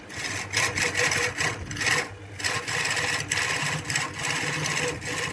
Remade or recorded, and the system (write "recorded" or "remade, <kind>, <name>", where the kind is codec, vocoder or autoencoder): recorded